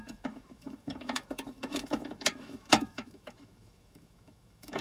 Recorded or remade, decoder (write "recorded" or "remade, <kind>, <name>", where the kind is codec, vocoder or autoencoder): remade, autoencoder, DAC-VAE